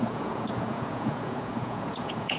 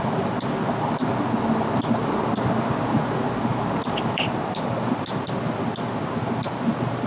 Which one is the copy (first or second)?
first